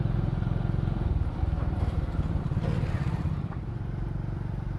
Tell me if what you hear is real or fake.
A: fake